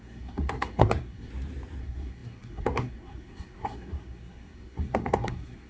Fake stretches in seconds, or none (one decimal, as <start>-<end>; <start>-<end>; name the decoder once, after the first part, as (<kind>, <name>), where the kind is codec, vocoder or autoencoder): 0.0-1.3 (codec, SNAC); 1.8-5.7

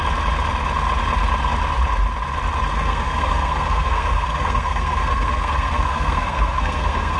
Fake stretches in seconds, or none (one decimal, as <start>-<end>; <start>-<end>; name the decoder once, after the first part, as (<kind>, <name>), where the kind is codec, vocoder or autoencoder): 2.7-7.2 (codec, SNAC)

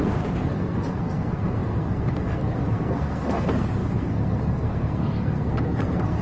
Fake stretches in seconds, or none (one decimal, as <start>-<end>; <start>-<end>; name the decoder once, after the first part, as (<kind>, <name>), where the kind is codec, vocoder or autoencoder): 0.0-6.2 (codec, SNAC)

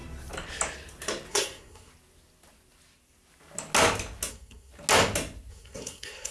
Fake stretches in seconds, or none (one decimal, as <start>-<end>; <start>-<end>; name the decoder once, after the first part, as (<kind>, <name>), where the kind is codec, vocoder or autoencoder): 1.3-1.9 (codec, SNAC); 4.3-4.7; 5.5-6.3